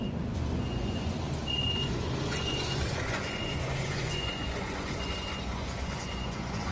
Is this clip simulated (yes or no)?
yes